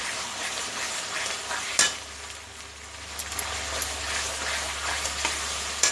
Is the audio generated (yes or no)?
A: yes